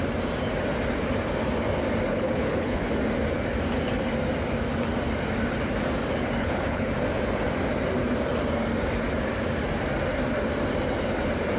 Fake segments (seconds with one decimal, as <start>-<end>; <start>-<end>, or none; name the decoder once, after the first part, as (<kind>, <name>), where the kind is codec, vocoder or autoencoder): 2.1-2.9 (codec, HILCodec); 6.4-6.9